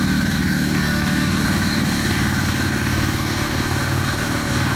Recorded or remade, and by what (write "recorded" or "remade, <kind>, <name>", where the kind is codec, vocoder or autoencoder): remade, codec, DAC